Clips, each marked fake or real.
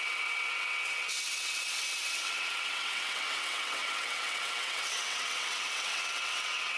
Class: fake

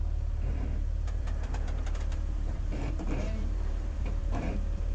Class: fake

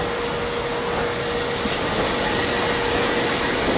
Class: real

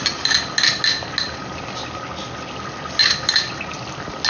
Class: real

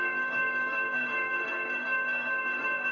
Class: fake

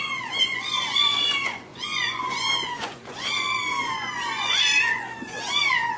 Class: fake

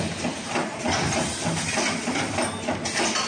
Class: real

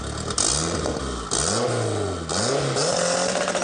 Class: real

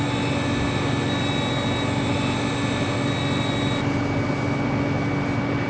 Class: real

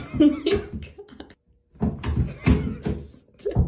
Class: real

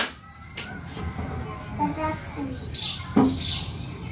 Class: real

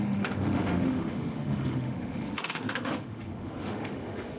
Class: fake